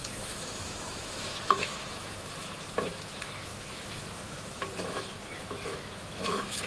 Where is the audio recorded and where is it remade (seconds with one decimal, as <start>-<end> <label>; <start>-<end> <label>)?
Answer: 0.0-6.7 remade